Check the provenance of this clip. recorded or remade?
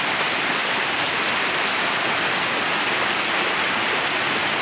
recorded